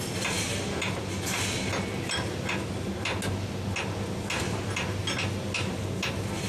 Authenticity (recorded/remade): recorded